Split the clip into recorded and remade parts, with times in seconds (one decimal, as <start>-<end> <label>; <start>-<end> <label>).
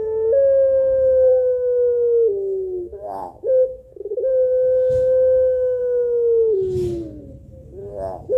0.0-1.3 recorded; 1.3-5.8 remade; 5.8-8.4 recorded